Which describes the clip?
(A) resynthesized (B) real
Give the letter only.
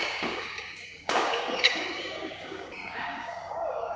A